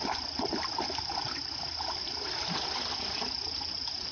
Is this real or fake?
real